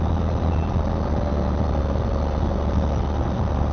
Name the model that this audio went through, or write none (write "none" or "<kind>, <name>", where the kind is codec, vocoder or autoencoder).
none